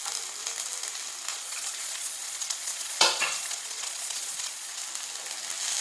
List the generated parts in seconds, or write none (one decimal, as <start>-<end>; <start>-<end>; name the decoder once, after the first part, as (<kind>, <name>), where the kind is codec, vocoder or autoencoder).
1.3-4.8 (vocoder, Vocos)